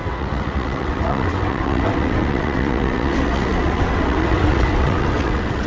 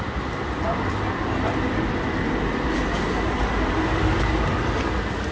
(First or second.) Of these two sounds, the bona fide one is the second